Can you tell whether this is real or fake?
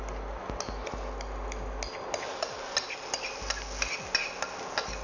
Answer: real